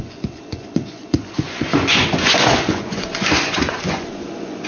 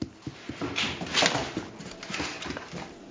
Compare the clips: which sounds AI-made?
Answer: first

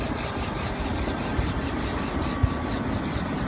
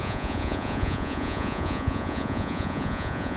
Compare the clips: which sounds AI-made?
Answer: second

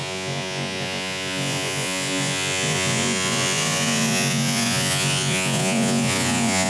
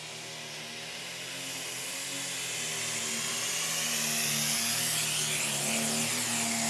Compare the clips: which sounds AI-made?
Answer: first